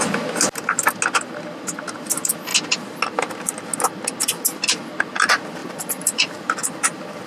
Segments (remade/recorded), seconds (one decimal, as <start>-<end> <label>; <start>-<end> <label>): 0.0-5.6 recorded; 5.6-7.3 remade